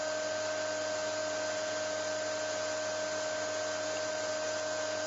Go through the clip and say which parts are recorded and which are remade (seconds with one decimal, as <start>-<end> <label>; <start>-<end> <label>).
0.0-5.1 recorded